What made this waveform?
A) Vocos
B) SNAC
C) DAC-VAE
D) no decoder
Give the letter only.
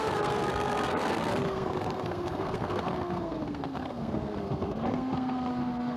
B